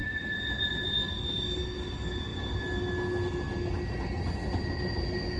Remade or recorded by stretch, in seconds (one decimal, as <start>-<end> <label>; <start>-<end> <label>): 0.0-0.7 remade; 0.7-5.4 recorded